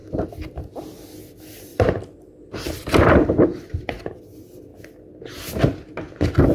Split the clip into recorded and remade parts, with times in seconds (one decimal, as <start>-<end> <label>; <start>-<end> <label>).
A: 0.0-1.7 recorded; 1.7-4.1 remade; 4.1-6.5 recorded

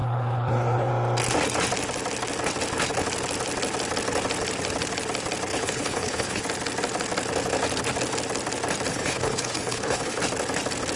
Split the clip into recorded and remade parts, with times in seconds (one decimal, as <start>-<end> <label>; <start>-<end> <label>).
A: 0.0-0.9 remade; 0.9-5.5 recorded; 5.5-6.4 remade; 6.4-8.9 recorded; 8.9-10.2 remade; 10.2-11.0 recorded

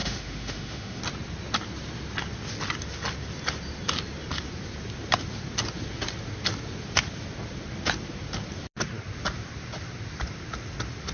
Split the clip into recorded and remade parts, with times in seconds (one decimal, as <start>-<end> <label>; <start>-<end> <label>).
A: 0.0-1.0 remade; 1.0-11.1 recorded

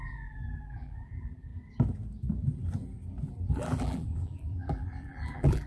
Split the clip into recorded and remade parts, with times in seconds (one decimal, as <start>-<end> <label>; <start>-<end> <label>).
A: 0.0-1.5 remade; 1.5-3.5 recorded; 3.5-5.7 remade

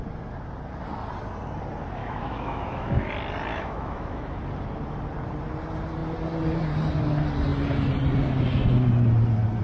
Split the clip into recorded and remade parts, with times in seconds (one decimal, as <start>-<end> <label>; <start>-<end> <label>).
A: 0.0-2.0 recorded; 2.0-3.1 remade; 3.1-3.5 recorded; 3.5-4.4 remade; 4.4-9.6 recorded